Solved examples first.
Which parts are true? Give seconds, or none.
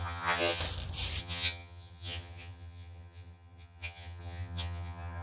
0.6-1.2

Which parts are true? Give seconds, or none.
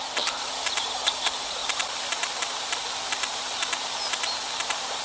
0.0-5.0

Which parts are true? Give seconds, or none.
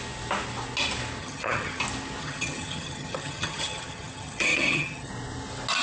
0.0-1.2; 1.8-2.2; 5.1-5.8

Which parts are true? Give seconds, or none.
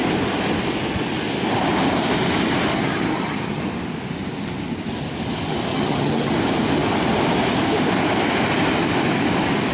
0.0-2.7; 3.6-5.7; 6.3-9.7